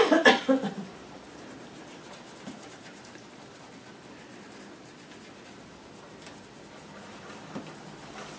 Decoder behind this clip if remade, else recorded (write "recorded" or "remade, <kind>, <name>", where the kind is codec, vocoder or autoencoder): recorded